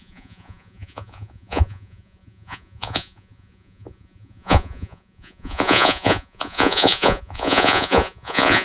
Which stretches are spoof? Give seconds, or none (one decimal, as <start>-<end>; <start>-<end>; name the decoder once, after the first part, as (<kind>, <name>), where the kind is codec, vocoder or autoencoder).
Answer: 0.0-8.6 (vocoder, Vocos)